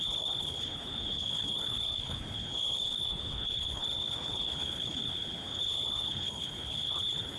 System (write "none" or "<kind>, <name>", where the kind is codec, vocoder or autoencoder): codec, HILCodec